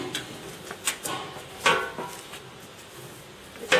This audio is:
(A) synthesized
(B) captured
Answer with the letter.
B